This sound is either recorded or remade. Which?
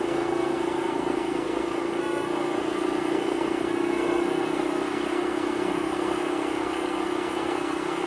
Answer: remade